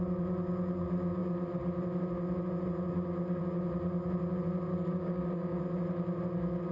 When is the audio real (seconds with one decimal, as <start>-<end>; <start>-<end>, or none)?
0.0-4.7; 5.6-6.7